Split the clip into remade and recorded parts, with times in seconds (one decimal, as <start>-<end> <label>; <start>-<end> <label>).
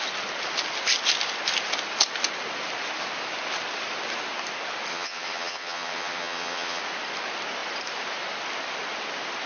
0.0-4.9 recorded; 4.9-6.8 remade; 6.8-9.5 recorded